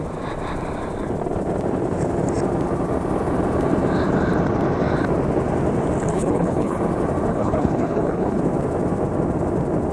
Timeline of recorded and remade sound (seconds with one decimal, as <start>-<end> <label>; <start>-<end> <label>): 0.0-6.1 recorded; 6.1-6.8 remade; 6.8-7.3 recorded; 7.3-8.4 remade; 8.4-9.9 recorded